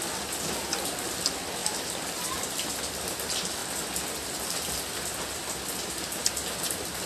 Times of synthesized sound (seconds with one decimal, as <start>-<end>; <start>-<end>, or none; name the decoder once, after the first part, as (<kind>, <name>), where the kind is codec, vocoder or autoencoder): 1.6-2.7 (vocoder, BigVGAN v2)